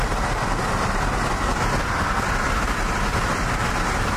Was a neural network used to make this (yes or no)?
no